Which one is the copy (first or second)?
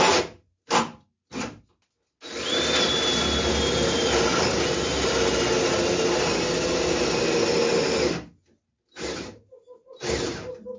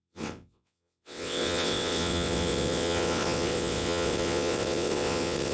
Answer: second